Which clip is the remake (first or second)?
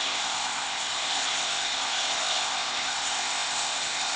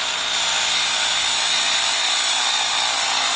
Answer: first